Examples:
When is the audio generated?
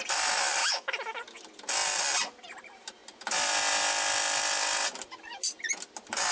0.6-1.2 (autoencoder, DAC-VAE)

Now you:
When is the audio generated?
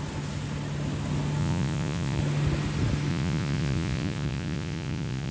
1.4-2.2 (vocoder, Vocos); 3.1-5.3